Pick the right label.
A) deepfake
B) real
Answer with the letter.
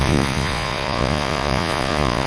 A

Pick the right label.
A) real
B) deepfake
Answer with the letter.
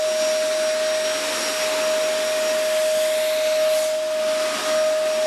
A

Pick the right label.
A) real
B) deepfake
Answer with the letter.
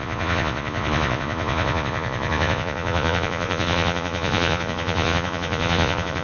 B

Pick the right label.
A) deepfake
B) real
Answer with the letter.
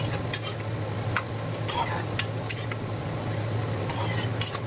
B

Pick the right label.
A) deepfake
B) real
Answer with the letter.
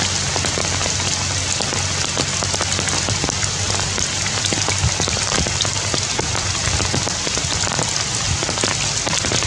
B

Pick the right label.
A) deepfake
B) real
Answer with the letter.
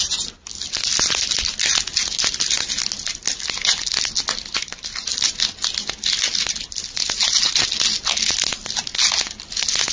B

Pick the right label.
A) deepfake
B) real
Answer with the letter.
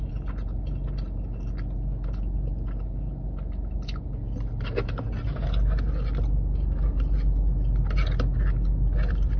B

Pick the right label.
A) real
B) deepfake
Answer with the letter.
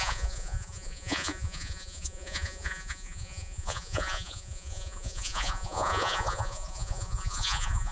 B